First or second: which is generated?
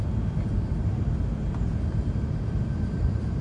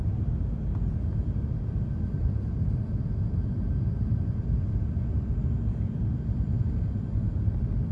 first